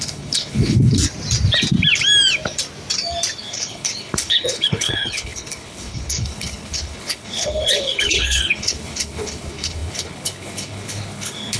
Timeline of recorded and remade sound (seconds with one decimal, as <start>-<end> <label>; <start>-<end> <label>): 0.0-1.0 remade; 1.0-3.4 recorded; 3.4-11.6 remade